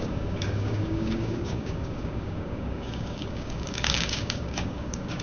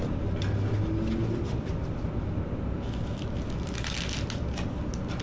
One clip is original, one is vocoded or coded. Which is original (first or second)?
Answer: second